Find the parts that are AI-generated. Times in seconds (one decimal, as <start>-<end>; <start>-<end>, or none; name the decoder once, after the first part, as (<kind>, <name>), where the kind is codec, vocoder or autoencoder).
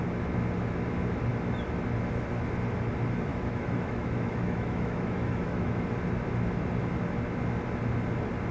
3.3-5.9 (autoencoder, DAC-VAE)